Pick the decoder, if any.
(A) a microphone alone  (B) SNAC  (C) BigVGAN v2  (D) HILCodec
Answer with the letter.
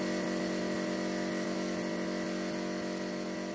A